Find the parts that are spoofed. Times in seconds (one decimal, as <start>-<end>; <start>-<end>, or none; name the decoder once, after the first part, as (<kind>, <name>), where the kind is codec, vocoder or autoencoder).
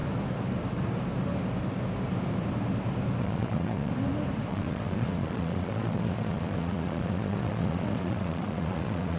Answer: 3.2-3.9 (vocoder, Vocos); 4.5-9.2